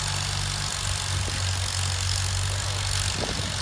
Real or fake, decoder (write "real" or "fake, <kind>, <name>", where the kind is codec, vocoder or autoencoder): real